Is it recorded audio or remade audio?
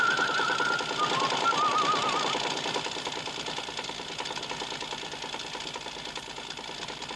recorded